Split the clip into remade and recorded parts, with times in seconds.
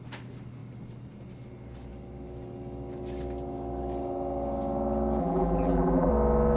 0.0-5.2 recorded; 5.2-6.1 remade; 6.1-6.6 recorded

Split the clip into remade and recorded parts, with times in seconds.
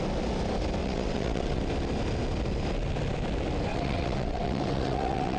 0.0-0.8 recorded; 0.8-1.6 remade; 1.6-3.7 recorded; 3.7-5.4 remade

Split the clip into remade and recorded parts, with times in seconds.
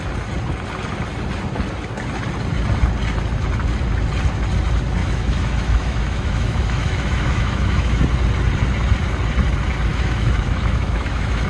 0.0-5.0 recorded; 5.0-8.0 remade; 8.0-9.9 recorded; 9.9-11.5 remade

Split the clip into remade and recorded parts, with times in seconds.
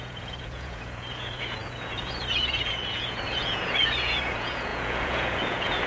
0.0-5.9 remade